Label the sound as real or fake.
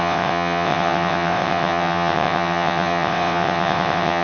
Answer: fake